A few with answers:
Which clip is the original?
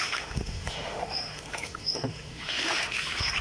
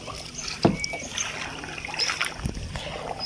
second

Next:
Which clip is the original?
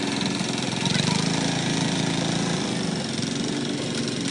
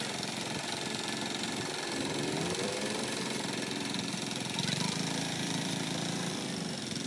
first